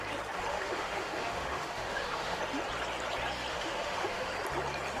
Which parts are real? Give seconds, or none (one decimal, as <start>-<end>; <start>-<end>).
0.0-0.5; 2.4-3.5; 4.3-5.0